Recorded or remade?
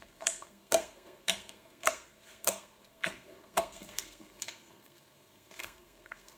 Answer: remade